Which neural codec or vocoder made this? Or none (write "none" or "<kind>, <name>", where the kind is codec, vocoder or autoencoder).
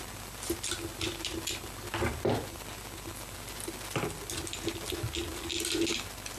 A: none